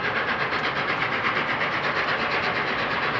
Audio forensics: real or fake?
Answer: real